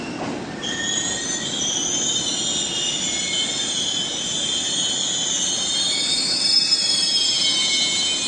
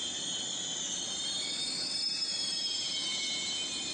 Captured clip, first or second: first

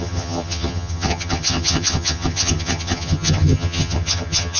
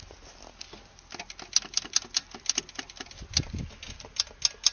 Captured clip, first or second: second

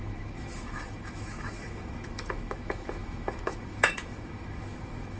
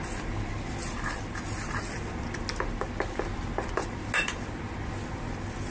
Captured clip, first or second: second